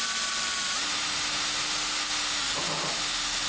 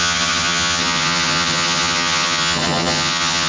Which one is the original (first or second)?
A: first